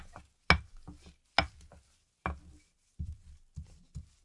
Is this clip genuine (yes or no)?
yes